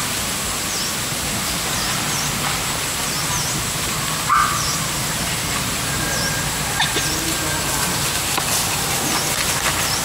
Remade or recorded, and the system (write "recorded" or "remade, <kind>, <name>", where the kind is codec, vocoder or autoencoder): recorded